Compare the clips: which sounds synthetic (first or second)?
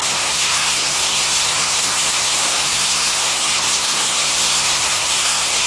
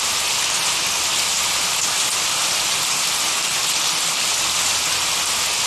first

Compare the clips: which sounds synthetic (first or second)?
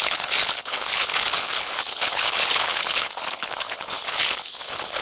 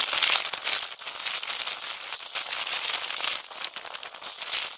first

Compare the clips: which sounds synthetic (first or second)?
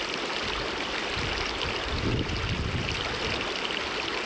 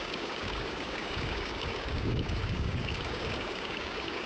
second